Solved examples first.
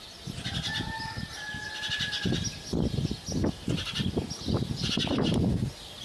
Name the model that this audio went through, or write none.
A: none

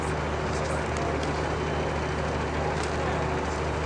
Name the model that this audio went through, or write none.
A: none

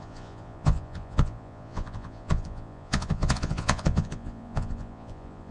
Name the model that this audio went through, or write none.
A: vocoder, Vocos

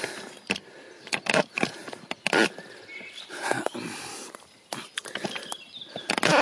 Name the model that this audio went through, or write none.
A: none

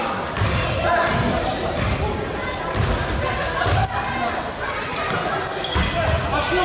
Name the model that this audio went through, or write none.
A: none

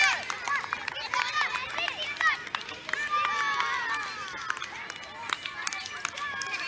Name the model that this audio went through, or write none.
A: none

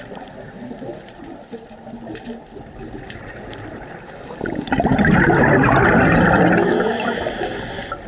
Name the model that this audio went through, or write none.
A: none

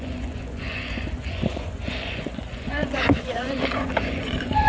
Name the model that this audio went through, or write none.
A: vocoder, Vocos